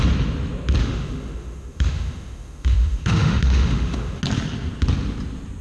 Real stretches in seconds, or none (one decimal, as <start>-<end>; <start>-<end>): 0.0-0.8; 4.2-5.6